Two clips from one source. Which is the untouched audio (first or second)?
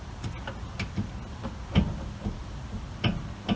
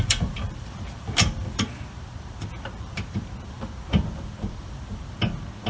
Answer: first